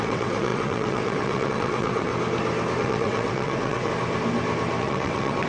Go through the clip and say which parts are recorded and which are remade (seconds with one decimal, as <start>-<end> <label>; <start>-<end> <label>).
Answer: 0.0-2.1 remade; 2.1-2.8 recorded; 2.8-3.9 remade; 3.9-4.8 recorded; 4.8-5.5 remade